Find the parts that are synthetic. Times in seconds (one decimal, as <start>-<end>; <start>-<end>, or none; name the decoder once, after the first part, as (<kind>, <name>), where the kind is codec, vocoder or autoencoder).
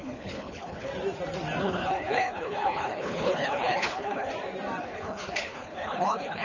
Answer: 0.0-0.9 (codec, HILCodec); 1.6-4.3; 4.8-6.4